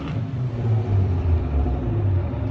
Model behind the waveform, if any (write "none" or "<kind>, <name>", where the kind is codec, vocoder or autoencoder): vocoder, BigVGAN v2